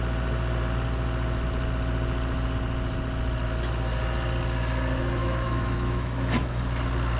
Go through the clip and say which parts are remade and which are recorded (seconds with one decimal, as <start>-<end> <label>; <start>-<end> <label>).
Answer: 0.0-5.2 recorded; 5.2-6.6 remade; 6.6-7.2 recorded